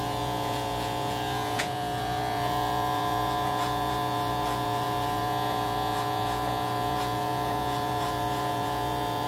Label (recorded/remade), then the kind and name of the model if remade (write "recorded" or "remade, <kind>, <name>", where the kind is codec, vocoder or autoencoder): remade, vocoder, Vocos